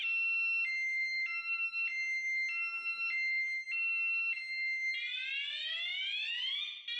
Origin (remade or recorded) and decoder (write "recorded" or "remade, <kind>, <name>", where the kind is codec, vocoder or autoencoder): recorded